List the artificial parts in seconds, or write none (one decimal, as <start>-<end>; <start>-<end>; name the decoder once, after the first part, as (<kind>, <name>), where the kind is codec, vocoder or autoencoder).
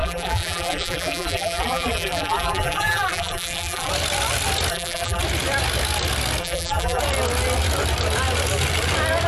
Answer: 0.0-3.9 (vocoder, BigVGAN v2); 4.7-5.2; 6.4-7.0